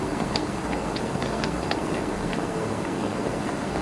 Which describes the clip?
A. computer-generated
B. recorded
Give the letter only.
A